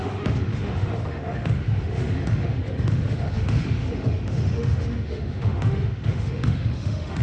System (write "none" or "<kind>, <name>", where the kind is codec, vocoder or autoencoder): autoencoder, DAC-VAE